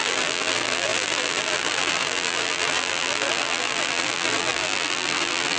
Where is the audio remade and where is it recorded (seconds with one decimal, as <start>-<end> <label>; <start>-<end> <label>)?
0.0-5.6 remade